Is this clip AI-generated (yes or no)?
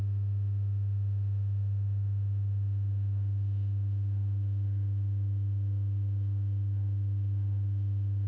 yes